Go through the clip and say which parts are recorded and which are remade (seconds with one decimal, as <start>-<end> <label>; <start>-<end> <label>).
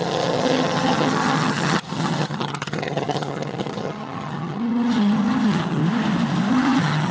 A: 0.0-5.8 remade; 5.8-6.5 recorded; 6.5-7.1 remade